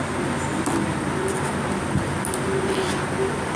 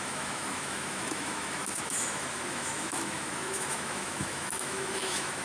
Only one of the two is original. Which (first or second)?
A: first